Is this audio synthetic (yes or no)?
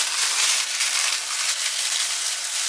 no